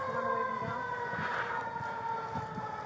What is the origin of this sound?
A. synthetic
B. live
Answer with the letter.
B